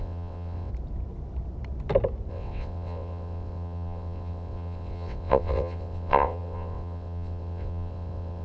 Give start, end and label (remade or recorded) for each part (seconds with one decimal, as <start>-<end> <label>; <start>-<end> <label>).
0.0-0.7 remade; 0.7-2.3 recorded; 2.3-8.4 remade